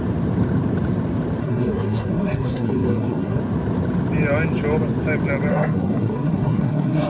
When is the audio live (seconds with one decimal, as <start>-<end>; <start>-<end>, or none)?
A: 0.0-1.4; 3.4-5.5